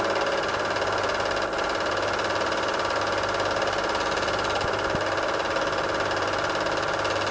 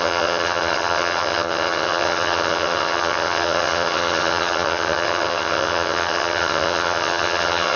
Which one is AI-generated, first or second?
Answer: second